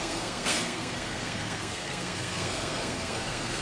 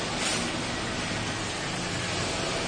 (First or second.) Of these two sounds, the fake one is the first